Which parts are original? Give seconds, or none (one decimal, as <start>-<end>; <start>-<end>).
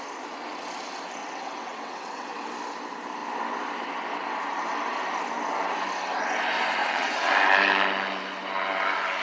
0.0-1.2; 2.5-6.8; 7.3-9.2